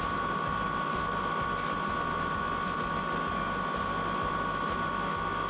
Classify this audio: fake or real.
real